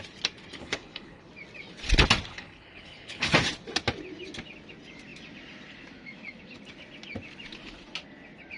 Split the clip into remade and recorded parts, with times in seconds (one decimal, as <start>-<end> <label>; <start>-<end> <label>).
0.0-0.6 recorded; 0.6-1.3 remade; 1.3-2.3 recorded; 2.3-3.3 remade; 3.3-8.6 recorded